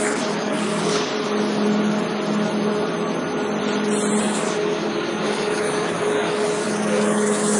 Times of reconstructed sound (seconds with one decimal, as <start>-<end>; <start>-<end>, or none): 0.0-1.1; 4.2-7.6